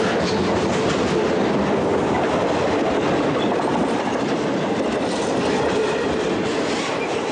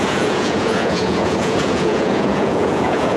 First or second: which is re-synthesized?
second